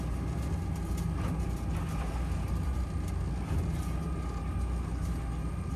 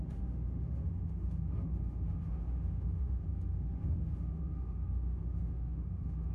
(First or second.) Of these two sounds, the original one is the first